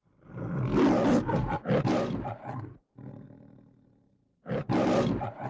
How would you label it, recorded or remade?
recorded